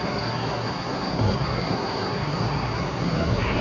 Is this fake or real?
fake